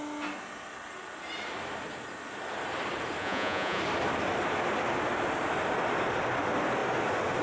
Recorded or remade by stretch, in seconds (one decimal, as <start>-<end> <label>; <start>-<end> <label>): 0.0-3.2 recorded; 3.2-3.8 remade; 3.8-7.4 recorded